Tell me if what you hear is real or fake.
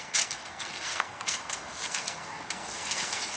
fake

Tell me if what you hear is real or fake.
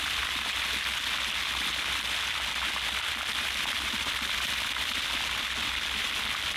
real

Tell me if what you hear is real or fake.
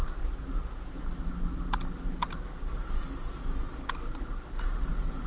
real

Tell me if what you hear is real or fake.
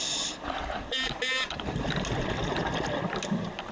real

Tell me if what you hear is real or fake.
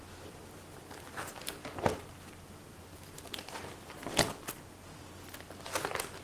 real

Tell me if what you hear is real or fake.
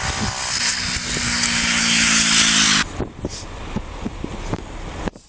real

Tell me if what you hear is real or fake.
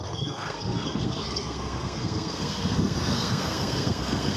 fake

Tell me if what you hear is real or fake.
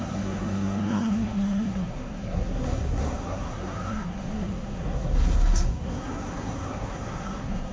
fake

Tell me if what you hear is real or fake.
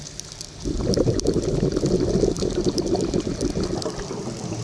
real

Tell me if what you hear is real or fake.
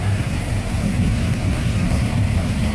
fake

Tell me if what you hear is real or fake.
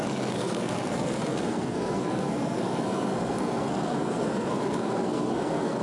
fake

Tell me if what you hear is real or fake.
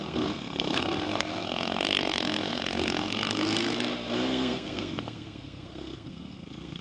fake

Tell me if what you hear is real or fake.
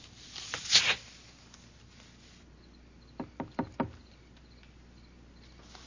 real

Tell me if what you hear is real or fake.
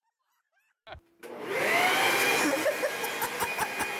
real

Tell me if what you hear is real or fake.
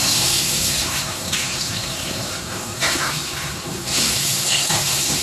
fake